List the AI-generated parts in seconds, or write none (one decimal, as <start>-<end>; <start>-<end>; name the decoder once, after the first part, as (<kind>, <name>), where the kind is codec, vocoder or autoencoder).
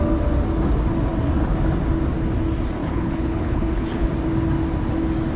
2.8-4.1 (codec, HILCodec)